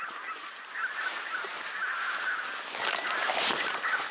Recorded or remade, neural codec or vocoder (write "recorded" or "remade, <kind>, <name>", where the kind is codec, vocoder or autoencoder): recorded